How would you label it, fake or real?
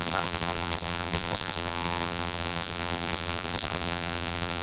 fake